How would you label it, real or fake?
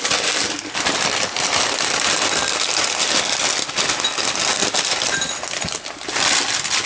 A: real